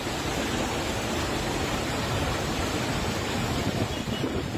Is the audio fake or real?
real